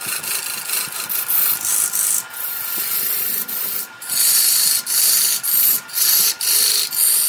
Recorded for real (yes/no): yes